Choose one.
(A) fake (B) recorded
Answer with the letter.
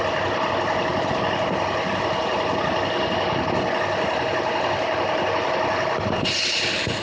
B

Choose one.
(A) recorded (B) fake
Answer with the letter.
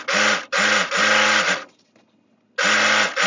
A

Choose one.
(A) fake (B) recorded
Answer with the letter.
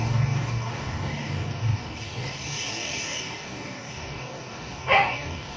A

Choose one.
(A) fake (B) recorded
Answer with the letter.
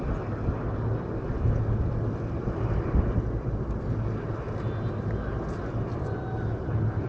B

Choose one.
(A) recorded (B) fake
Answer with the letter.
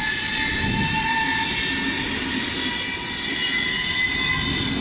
A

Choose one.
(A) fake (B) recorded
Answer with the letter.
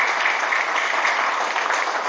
B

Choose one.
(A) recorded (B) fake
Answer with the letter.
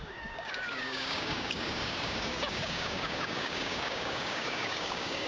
B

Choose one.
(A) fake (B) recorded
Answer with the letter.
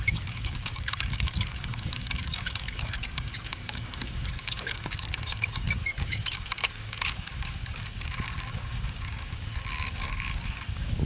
A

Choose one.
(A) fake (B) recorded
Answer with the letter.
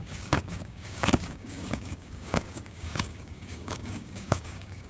A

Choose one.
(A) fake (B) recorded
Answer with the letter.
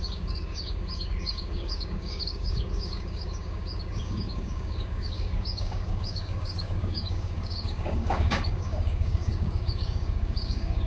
A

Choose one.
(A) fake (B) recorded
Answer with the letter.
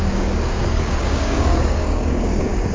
A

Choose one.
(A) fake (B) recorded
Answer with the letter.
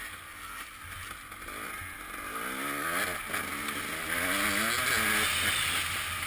B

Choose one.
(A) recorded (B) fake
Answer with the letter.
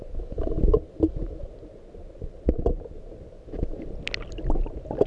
A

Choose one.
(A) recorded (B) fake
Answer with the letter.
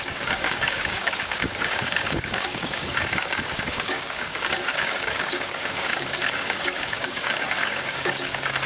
B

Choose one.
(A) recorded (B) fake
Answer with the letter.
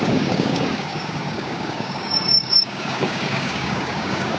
B